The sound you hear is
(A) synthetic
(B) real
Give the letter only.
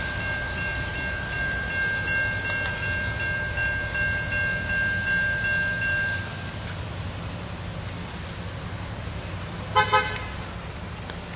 B